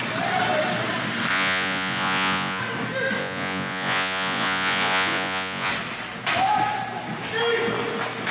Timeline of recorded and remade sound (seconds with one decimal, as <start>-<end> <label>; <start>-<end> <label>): 0.0-1.3 recorded; 1.3-2.6 remade; 2.6-3.2 recorded; 3.2-5.7 remade; 5.7-8.3 recorded